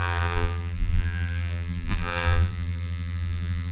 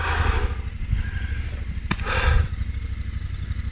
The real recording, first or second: second